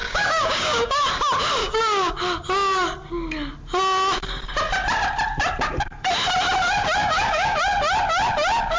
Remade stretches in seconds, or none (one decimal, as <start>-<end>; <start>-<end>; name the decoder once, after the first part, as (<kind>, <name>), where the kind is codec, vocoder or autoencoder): 0.0-1.1 (codec, DAC); 1.6-2.1; 7.0-7.6

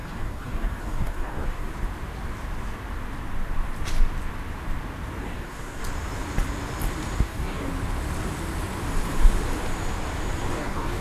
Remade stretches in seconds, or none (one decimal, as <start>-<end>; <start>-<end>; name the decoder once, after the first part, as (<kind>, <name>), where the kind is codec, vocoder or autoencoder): 0.0-1.7 (codec, DAC); 5.2-5.8; 7.2-7.7; 10.4-11.0

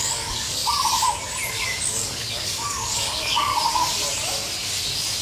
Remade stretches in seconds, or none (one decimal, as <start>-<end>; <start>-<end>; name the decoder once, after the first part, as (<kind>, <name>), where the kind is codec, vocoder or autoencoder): 0.0-0.6 (codec, DAC); 1.5-3.5

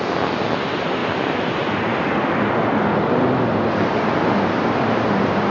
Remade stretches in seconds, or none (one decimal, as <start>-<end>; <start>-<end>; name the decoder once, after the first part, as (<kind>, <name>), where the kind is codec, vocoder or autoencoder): none